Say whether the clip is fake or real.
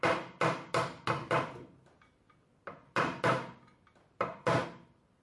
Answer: real